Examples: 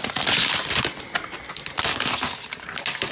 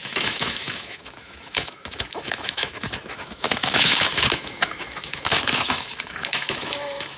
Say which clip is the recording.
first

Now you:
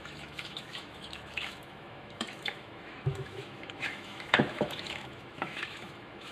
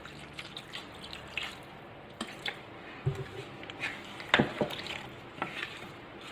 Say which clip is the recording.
second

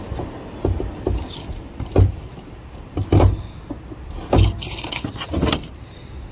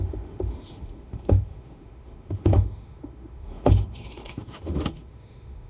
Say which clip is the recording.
first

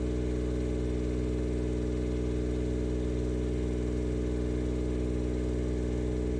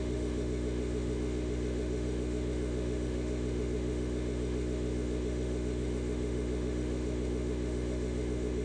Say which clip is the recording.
first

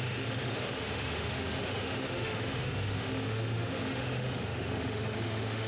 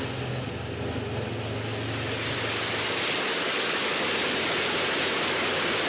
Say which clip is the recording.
second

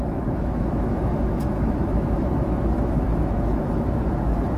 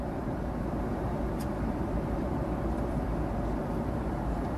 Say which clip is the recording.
second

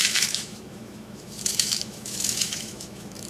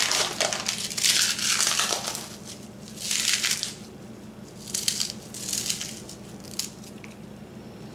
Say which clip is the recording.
second